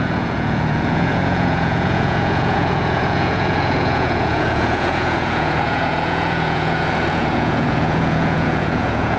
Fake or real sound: fake